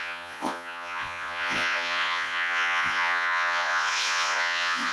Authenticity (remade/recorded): remade